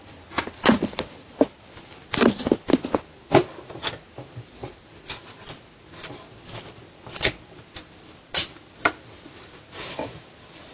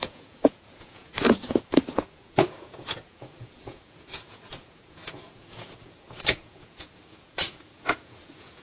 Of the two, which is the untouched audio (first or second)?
first